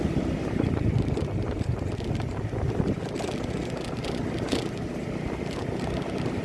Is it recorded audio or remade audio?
recorded